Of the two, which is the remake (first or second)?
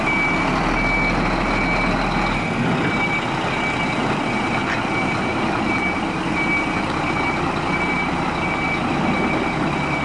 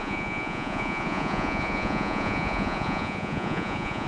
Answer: second